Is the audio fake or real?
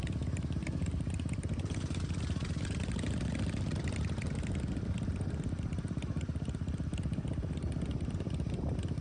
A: fake